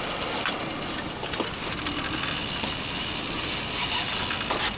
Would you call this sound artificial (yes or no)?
no